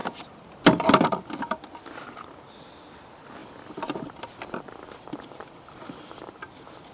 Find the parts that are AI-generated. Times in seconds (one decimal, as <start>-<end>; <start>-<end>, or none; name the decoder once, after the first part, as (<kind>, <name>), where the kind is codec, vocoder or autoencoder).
3.4-6.2 (vocoder, BigVGAN v2)